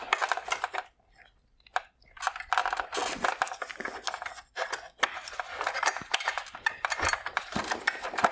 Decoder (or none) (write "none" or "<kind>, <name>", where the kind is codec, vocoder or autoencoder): none